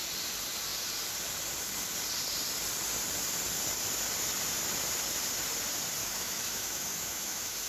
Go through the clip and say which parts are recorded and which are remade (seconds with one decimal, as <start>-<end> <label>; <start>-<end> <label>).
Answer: 0.0-6.0 recorded; 6.0-7.7 remade